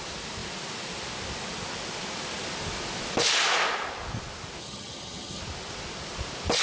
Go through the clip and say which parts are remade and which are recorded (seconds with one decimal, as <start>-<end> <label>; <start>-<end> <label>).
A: 0.0-4.6 recorded; 4.6-5.4 remade; 5.4-6.6 recorded